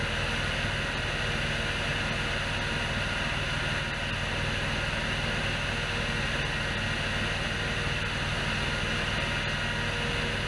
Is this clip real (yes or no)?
yes